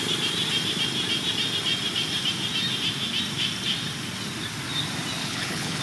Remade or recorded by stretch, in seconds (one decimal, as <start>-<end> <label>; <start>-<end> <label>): 0.0-5.2 recorded; 5.2-5.8 remade